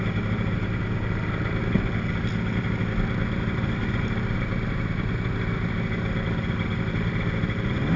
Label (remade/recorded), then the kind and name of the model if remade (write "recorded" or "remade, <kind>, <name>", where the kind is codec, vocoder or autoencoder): recorded